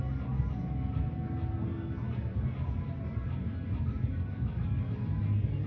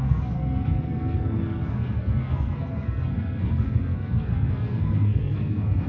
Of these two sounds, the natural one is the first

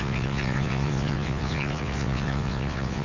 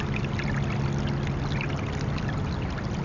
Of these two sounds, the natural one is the second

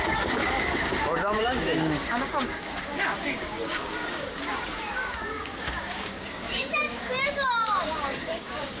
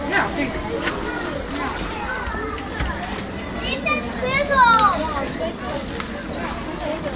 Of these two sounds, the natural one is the second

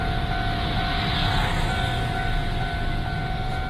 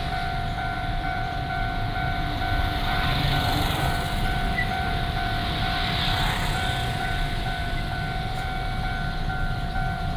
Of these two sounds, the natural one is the first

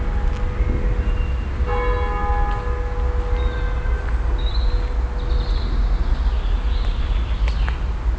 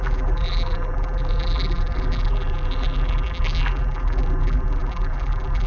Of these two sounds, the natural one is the first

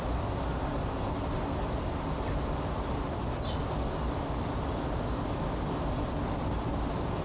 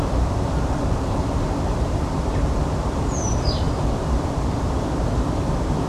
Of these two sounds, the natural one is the first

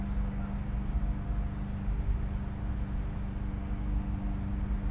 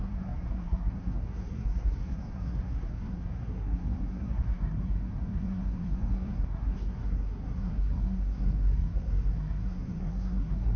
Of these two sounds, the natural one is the first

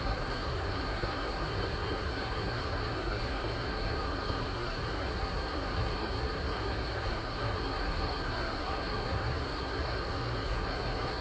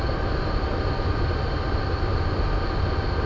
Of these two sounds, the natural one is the second